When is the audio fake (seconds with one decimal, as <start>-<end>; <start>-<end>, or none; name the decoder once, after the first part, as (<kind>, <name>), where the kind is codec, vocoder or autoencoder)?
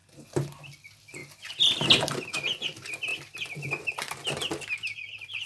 0.6-1.2 (vocoder, BigVGAN v2); 1.8-3.1; 5.0-5.5